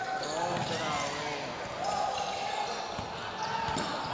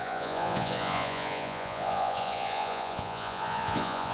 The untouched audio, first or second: first